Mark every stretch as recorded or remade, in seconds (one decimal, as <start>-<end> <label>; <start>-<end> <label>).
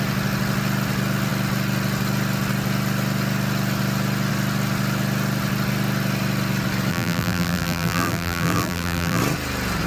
0.0-6.9 recorded; 6.9-9.2 remade; 9.2-9.9 recorded